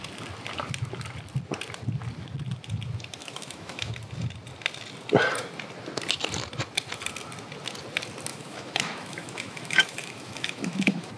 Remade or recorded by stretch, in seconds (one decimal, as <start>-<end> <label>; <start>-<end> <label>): 0.0-3.2 recorded; 3.2-3.9 remade; 3.9-8.3 recorded; 8.3-11.2 remade